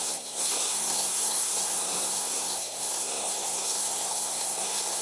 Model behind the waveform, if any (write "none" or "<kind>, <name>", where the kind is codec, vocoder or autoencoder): codec, SNAC